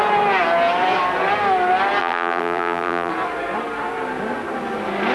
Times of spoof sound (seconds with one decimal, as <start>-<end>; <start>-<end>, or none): 2.0-3.1